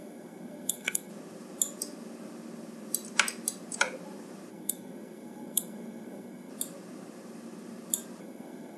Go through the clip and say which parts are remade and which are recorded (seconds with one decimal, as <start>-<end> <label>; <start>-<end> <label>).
0.0-1.1 remade; 1.1-4.5 recorded; 4.5-6.5 remade; 6.5-8.2 recorded; 8.2-8.8 remade